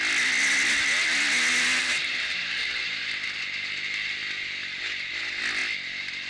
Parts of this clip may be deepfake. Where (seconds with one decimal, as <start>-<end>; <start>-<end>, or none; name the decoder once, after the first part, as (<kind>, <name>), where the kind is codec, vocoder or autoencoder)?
1.8-3.0 (vocoder, BigVGAN v2)